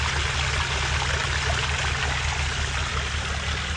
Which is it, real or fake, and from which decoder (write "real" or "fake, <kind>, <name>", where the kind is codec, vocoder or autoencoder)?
real